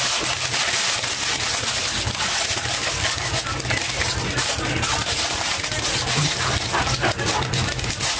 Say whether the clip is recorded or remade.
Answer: recorded